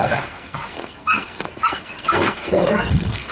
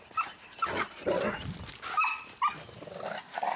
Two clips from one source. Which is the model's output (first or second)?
first